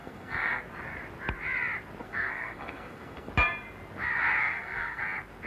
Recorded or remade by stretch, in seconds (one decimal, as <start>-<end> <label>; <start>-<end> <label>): 0.0-0.6 remade; 0.6-2.0 recorded; 2.0-3.3 remade; 3.3-4.4 recorded; 4.4-5.0 remade; 5.0-5.5 recorded